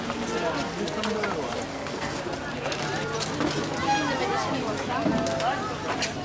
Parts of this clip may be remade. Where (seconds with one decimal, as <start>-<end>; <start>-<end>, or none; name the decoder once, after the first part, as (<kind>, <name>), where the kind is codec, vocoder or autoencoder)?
1.7-2.2 (codec, SNAC)